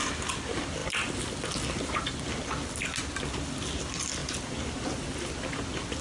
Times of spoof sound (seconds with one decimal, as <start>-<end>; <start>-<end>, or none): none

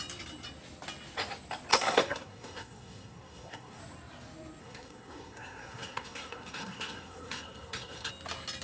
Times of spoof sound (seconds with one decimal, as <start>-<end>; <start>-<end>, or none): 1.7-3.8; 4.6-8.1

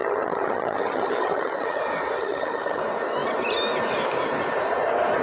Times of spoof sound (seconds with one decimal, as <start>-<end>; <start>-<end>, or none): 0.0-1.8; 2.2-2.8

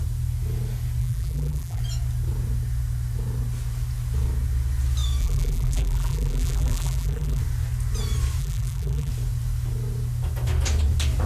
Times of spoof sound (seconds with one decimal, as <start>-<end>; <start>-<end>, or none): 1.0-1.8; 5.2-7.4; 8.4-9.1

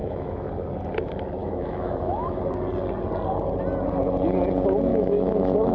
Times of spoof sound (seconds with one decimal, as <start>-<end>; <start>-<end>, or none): 0.0-0.5; 1.4-2.4; 4.9-5.7

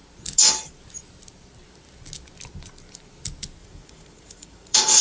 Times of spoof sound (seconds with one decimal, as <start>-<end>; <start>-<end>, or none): 3.6-5.0

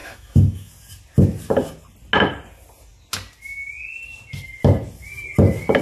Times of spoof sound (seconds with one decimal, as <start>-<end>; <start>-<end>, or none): 0.0-0.7